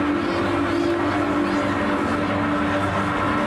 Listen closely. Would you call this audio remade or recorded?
recorded